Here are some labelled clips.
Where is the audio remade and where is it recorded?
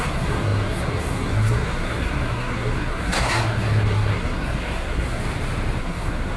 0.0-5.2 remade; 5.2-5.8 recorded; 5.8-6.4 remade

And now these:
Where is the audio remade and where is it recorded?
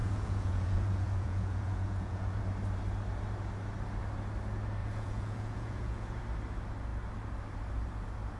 0.0-2.4 remade; 2.4-4.8 recorded; 4.8-6.2 remade; 6.2-8.4 recorded